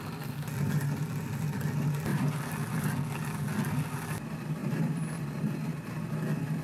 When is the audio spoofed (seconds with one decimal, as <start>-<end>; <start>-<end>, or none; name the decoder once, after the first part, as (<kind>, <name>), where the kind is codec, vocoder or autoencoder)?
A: 2.1-2.9 (vocoder, BigVGAN v2); 4.6-5.2